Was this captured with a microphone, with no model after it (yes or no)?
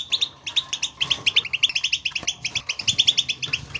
yes